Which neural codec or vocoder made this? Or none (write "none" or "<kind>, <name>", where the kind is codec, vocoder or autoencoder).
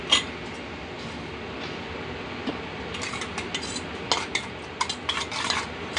none